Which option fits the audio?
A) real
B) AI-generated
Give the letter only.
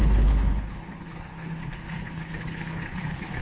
B